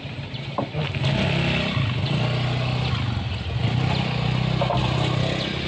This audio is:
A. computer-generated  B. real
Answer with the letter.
B